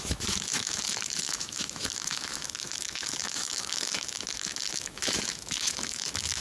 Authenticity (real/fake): fake